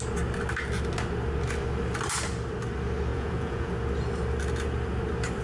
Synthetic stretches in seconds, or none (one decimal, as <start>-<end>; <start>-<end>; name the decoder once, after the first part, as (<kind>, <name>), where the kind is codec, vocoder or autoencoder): 3.1-3.7 (vocoder, Vocos)